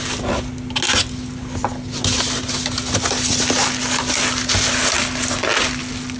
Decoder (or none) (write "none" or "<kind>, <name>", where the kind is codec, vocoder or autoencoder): none